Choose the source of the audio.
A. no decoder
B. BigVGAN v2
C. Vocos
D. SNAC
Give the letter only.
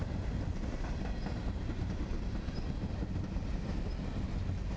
A